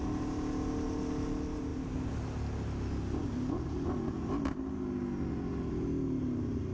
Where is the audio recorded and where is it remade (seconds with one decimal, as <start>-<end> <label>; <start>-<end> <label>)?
0.0-6.7 recorded